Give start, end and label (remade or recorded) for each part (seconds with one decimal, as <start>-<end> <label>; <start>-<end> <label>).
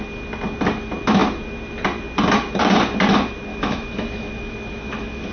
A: 0.0-3.5 recorded; 3.5-5.3 remade